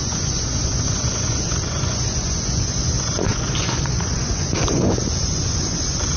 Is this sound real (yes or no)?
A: no